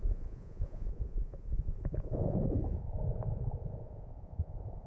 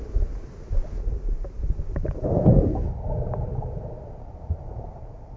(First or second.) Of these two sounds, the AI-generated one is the first